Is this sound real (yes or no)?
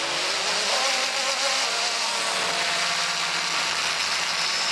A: yes